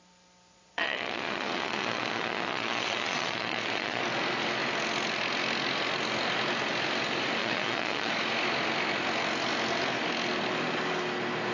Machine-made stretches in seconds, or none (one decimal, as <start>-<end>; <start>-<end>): 0.5-4.0; 7.4-8.1